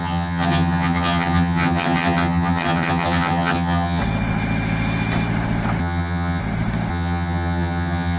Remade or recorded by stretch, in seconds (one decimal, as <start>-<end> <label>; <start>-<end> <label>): 0.0-4.0 remade; 4.0-5.8 recorded; 5.8-6.4 remade; 6.4-6.9 recorded; 6.9-8.2 remade

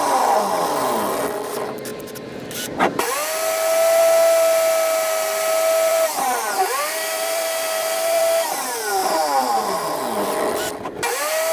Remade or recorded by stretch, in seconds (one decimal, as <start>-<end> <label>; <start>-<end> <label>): 0.0-5.9 recorded; 5.9-8.2 remade; 8.2-9.0 recorded; 9.0-10.0 remade; 10.0-11.5 recorded

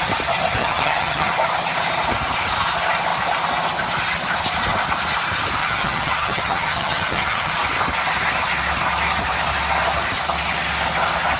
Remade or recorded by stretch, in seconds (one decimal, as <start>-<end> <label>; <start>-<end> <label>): 0.0-0.6 recorded; 0.6-1.3 remade; 1.3-5.6 recorded; 5.6-7.5 remade; 7.5-11.4 recorded

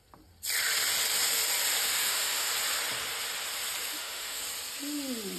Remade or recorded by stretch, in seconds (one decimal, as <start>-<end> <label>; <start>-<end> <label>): 0.0-2.0 recorded; 2.0-2.5 remade; 2.5-3.9 recorded; 3.9-4.4 remade; 4.4-5.4 recorded

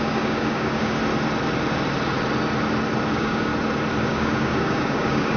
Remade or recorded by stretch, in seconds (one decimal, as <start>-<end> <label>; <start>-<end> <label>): 0.0-1.0 remade; 1.0-3.1 recorded; 3.1-3.5 remade; 3.5-4.0 recorded; 4.0-5.4 remade

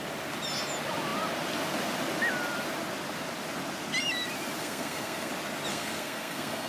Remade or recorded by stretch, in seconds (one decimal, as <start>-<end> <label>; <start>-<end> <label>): 0.0-4.6 recorded; 4.6-5.3 remade; 5.3-5.7 recorded; 5.7-6.7 remade

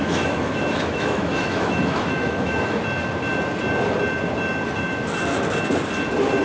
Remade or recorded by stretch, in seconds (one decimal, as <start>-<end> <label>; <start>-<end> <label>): 0.0-2.8 remade; 2.8-6.4 recorded